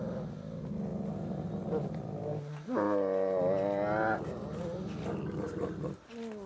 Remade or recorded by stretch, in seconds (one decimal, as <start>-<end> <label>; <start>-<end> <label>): 0.0-6.5 recorded